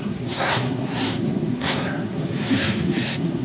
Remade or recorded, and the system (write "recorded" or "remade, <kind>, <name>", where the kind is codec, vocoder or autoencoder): remade, codec, SNAC